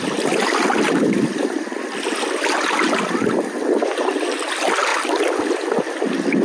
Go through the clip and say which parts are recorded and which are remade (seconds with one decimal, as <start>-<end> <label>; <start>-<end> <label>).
0.0-6.4 recorded